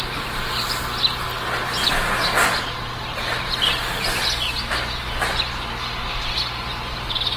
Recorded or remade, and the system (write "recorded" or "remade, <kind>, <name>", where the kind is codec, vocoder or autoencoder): recorded